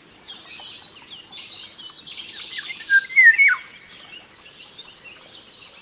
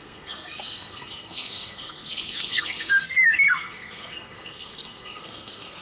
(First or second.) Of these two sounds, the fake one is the second